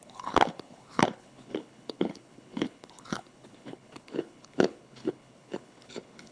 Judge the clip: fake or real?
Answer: fake